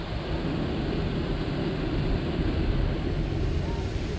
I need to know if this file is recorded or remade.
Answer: recorded